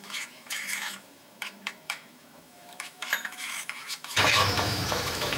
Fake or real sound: fake